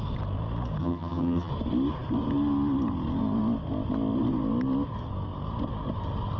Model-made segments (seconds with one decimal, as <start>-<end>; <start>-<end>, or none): 0.8-1.5